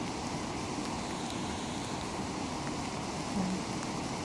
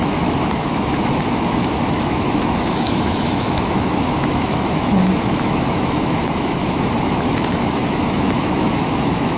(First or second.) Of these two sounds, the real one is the first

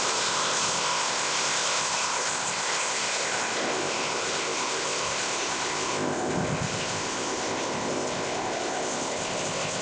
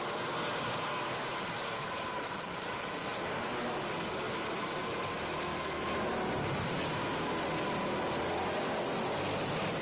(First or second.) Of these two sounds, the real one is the second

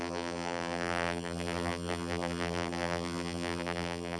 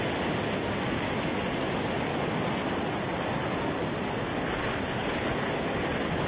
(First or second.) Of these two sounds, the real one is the second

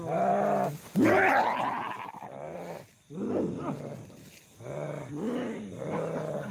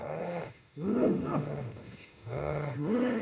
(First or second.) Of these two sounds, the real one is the first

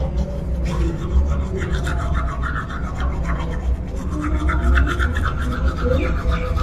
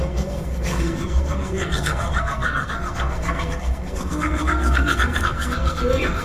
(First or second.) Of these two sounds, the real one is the first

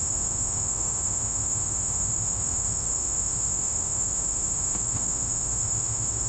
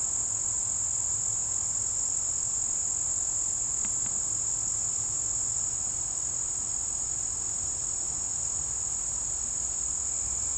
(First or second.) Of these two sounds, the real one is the second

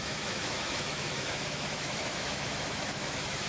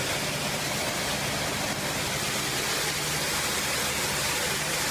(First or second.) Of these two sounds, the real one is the second